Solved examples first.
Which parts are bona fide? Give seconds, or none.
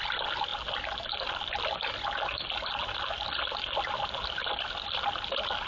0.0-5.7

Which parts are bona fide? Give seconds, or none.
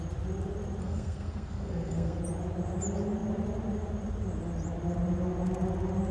0.0-0.8; 2.2-6.1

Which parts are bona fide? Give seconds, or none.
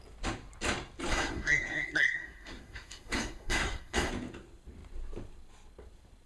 0.0-1.1; 4.1-6.3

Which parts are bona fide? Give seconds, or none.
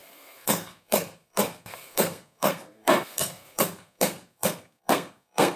none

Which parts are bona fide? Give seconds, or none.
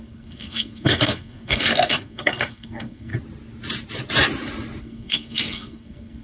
3.1-4.8